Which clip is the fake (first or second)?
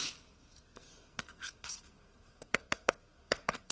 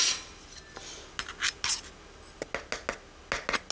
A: first